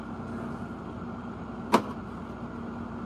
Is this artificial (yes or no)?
no